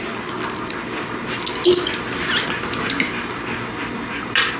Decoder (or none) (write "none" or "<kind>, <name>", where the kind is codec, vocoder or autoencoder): none